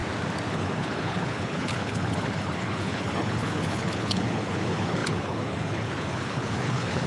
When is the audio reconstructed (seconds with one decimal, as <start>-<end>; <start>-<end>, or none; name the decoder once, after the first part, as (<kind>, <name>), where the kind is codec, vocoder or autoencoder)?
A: 0.5-7.1 (codec, HILCodec)